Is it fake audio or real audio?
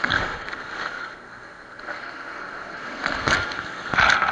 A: fake